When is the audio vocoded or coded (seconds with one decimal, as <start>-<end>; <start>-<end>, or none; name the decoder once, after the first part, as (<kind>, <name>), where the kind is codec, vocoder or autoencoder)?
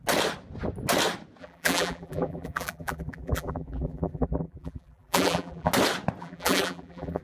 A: 1.4-5.7 (vocoder, BigVGAN v2); 6.2-7.2